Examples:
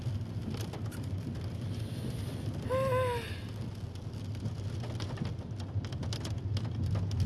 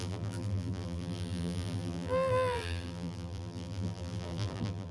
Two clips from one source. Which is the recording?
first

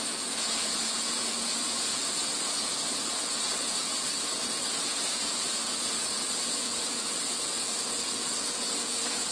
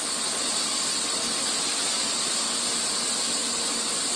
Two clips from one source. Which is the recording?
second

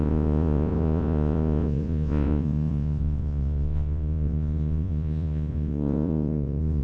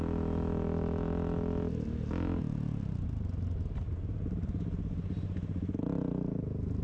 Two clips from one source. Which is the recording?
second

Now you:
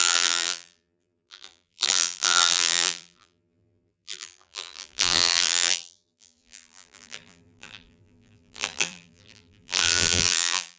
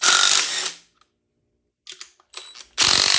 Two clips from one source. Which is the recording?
second